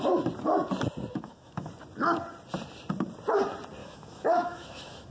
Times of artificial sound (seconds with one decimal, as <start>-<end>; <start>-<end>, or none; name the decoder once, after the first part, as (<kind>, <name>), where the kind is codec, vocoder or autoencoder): 1.1-1.7 (autoencoder, DAC-VAE); 3.8-5.1